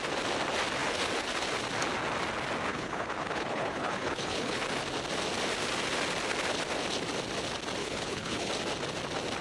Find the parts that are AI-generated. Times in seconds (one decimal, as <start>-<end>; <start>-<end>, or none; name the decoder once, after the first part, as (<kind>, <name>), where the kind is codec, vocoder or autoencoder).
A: 2.7-4.6 (codec, HILCodec); 7.8-8.5